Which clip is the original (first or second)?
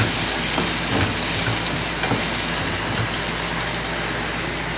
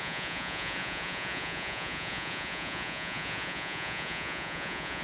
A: first